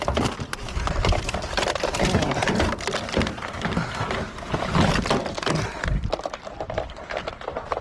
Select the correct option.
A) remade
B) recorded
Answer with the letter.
A